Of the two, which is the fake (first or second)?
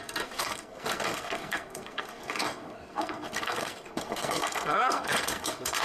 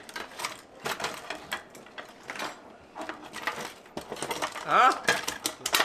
first